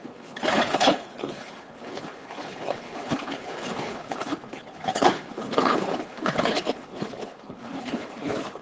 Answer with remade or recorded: remade